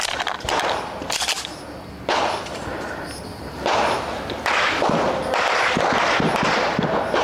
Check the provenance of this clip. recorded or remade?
recorded